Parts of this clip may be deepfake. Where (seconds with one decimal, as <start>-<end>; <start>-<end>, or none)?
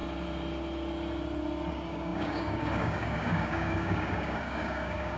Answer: 1.7-5.2